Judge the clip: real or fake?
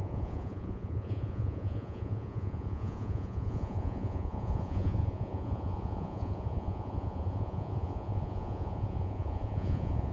fake